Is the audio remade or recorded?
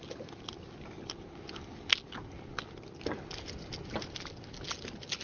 recorded